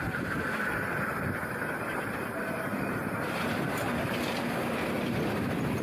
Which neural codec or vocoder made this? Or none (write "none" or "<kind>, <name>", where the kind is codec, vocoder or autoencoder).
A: vocoder, BigVGAN v2